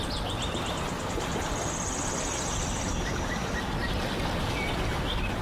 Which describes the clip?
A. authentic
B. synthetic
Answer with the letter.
A